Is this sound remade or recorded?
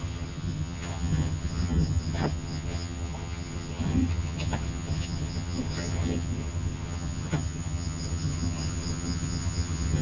remade